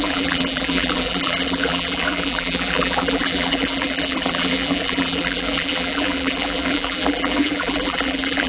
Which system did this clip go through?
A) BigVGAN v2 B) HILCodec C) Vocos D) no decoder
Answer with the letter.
A